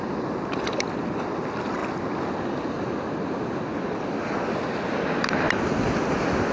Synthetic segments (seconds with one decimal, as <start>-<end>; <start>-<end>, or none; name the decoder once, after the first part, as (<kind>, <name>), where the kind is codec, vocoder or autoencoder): none